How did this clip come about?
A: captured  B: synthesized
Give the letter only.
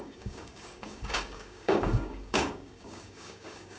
B